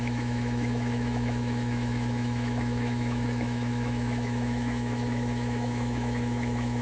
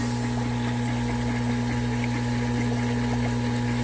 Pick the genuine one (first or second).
second